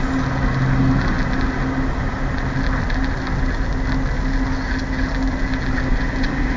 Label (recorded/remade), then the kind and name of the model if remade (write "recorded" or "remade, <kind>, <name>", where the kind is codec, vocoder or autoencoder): recorded